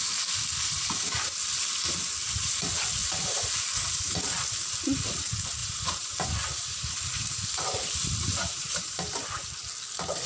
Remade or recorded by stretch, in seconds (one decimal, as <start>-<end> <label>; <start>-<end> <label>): 0.0-3.0 recorded; 3.0-3.6 remade; 3.6-5.6 recorded; 5.6-9.5 remade; 9.5-10.3 recorded